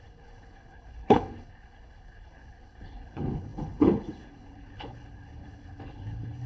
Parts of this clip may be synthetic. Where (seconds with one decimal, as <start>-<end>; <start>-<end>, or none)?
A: 0.0-6.5